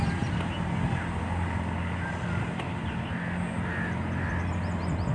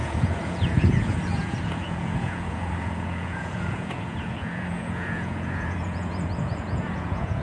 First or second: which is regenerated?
second